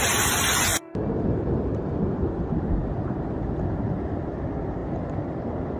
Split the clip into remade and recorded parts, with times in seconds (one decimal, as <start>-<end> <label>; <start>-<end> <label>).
0.0-0.7 recorded; 0.7-4.2 remade; 4.2-4.8 recorded; 4.8-5.8 remade